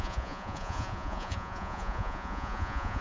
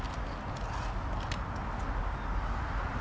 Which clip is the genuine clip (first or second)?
second